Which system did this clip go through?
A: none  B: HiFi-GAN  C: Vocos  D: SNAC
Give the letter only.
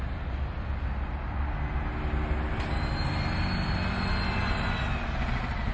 A